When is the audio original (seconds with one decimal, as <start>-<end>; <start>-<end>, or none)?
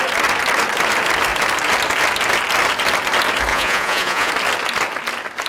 0.0-3.5; 4.3-5.5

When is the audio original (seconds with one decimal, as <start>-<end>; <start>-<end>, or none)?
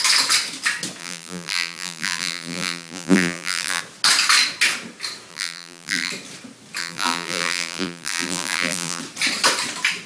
0.0-1.0; 3.8-5.3; 6.1-6.8; 9.0-10.1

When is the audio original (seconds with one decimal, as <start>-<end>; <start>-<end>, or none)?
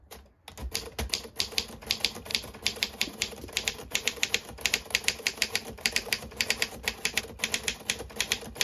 0.0-2.3; 7.2-8.6